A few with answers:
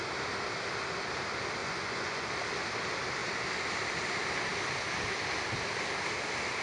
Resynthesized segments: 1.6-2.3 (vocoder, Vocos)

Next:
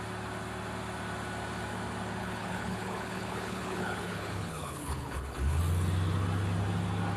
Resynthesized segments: 2.2-5.6 (codec, HILCodec)

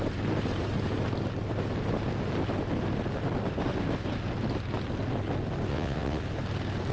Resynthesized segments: 5.7-6.2 (vocoder, WaveNeXt)

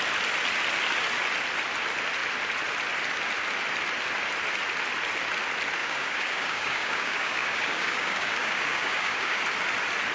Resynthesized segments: 5.8-9.4 (codec, DAC)

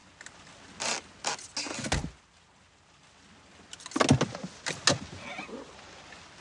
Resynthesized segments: none